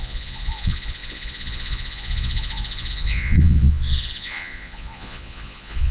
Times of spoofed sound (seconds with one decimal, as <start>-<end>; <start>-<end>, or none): 0.0-5.9